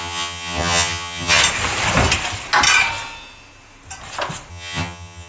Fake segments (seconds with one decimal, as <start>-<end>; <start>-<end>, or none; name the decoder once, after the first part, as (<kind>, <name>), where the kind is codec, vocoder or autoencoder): 0.0-1.4 (vocoder, HiFi-GAN); 4.5-5.3